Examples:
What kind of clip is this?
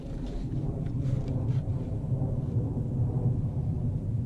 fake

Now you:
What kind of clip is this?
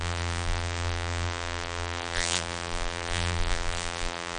fake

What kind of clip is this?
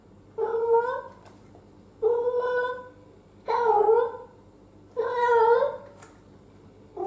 real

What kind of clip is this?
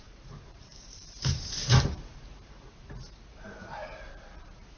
fake